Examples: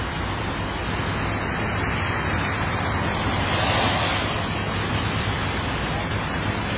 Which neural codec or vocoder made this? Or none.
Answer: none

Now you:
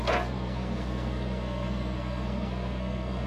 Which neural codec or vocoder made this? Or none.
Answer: codec, SNAC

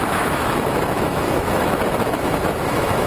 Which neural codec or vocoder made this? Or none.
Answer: autoencoder, DAC-VAE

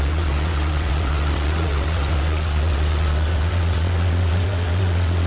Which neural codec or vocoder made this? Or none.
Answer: vocoder, WaveNeXt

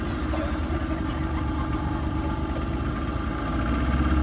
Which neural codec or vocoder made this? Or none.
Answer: none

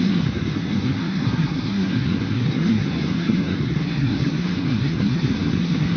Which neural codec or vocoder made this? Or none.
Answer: codec, SNAC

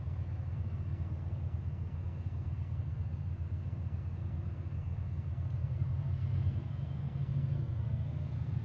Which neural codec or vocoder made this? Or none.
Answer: codec, SNAC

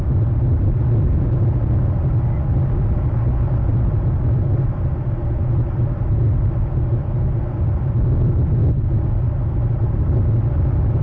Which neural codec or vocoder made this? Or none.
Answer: none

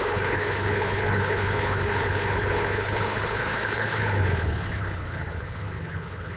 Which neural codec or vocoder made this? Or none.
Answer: codec, HILCodec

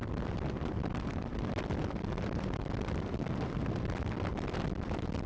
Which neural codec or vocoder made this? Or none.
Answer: vocoder, BigVGAN v2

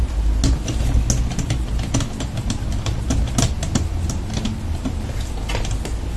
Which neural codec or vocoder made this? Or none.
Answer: none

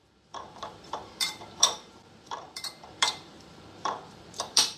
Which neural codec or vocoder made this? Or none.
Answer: vocoder, BigVGAN v2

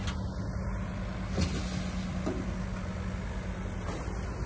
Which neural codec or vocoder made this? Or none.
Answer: none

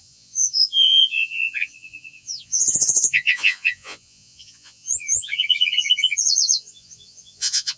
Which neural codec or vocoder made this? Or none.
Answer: vocoder, Vocos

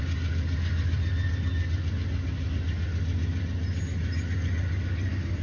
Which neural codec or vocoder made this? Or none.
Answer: none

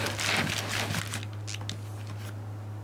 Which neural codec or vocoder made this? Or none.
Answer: none